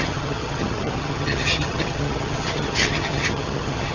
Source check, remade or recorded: remade